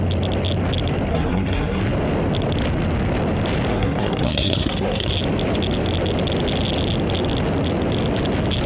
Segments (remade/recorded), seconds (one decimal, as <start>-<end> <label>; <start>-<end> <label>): 0.0-1.1 recorded; 1.1-1.8 remade; 1.8-3.7 recorded; 3.7-5.1 remade; 5.1-8.7 recorded